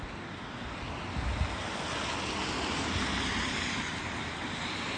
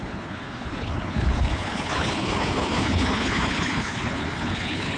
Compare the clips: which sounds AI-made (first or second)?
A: second